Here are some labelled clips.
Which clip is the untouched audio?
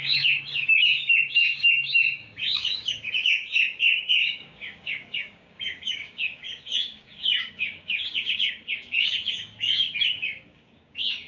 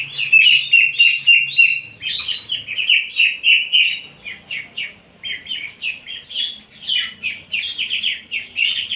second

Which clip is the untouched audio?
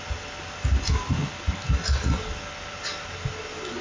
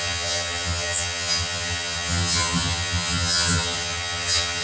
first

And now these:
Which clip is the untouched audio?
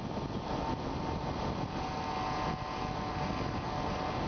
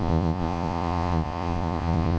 first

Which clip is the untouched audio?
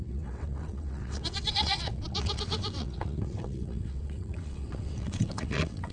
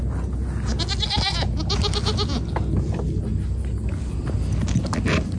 second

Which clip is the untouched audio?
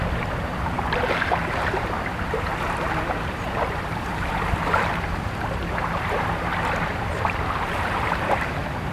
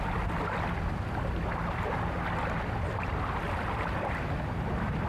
second